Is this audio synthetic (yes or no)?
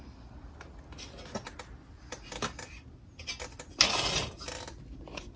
no